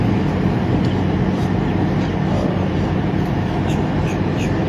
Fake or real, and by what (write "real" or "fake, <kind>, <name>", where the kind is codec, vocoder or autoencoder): real